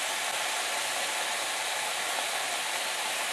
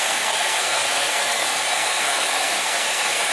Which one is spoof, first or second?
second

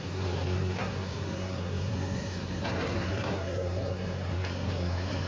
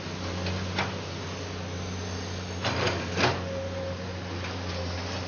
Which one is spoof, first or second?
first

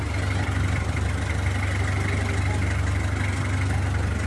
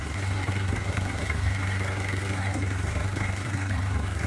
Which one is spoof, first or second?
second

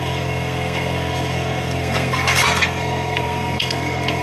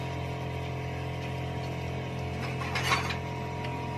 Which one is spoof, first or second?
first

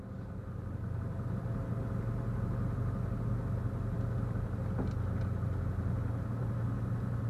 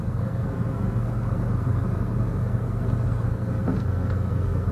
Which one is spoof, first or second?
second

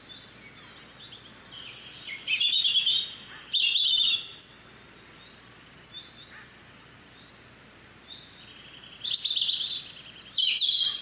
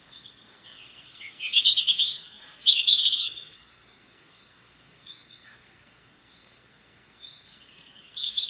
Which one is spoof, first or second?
second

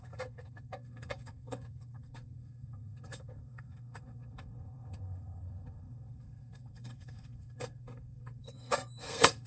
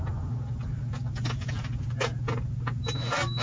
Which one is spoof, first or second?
first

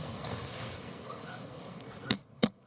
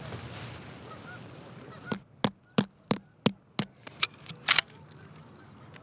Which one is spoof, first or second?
first